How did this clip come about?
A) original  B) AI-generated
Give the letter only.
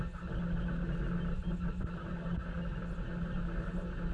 A